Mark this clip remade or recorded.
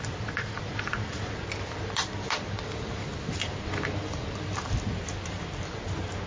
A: recorded